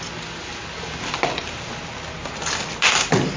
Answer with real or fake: real